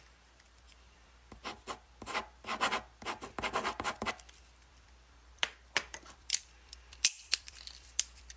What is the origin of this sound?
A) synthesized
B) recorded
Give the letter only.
A